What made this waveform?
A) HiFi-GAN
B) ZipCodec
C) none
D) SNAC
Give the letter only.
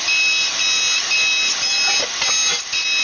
C